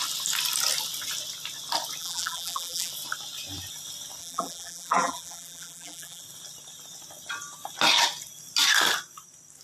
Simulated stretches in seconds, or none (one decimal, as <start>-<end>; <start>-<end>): 2.0-2.9; 4.2-6.2

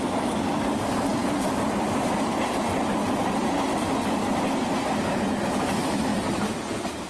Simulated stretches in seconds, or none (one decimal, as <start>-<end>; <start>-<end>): 6.1-7.1

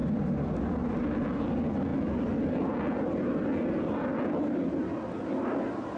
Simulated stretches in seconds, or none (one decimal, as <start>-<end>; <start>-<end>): none

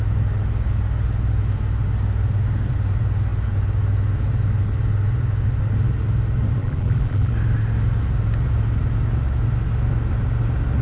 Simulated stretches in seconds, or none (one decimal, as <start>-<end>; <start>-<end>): 6.6-7.3

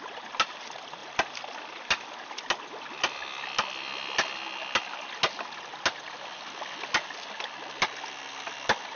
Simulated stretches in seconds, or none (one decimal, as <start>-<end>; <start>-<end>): none

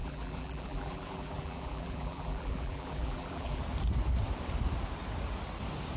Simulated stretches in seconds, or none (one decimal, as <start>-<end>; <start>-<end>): 0.0-3.6